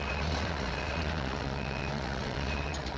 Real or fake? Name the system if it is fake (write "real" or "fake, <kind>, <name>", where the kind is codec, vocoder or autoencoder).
fake, vocoder, WaveNeXt